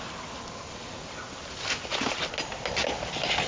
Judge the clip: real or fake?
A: real